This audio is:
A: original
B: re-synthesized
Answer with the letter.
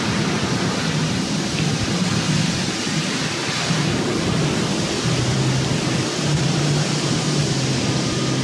A